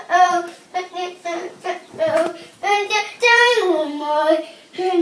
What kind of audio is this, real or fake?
fake